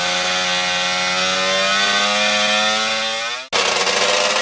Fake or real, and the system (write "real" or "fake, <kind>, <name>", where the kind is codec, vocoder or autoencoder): real